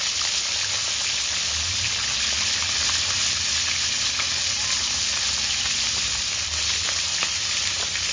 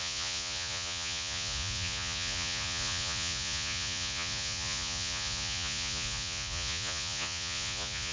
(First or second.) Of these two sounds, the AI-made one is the second